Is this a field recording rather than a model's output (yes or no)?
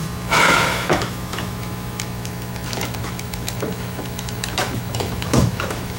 no